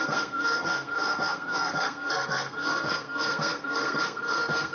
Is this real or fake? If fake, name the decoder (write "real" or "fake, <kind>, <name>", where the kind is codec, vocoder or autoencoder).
fake, codec, SNAC